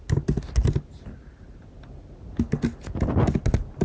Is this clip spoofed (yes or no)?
no